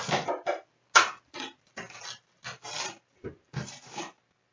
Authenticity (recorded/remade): recorded